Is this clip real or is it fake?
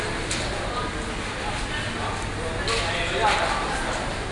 real